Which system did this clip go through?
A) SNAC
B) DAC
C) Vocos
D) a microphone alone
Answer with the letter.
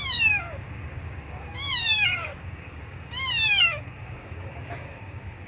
B